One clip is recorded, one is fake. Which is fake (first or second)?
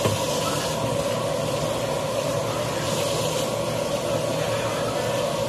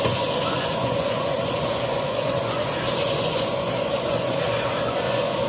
second